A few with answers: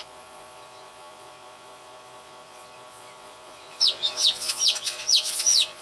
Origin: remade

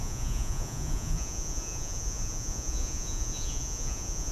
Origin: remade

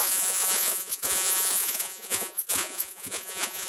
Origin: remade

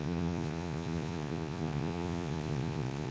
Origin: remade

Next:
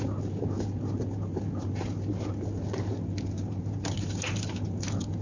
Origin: recorded